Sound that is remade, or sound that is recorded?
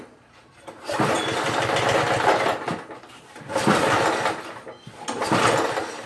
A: recorded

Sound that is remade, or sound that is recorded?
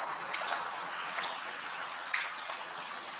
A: remade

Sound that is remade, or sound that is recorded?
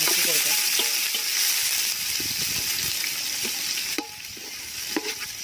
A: recorded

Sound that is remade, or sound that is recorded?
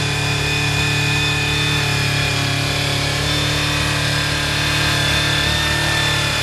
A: recorded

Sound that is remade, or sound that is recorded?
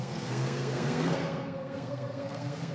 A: remade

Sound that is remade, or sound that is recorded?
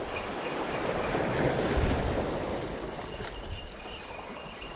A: recorded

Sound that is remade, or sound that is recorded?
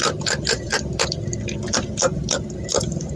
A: remade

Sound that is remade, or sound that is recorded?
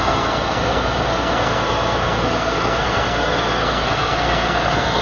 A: remade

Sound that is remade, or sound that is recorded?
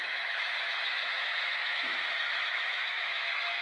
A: remade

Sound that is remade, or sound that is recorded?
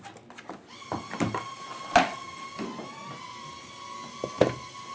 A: recorded